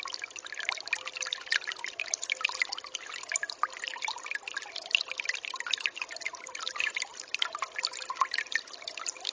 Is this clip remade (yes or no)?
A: no